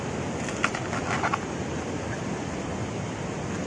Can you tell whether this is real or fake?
real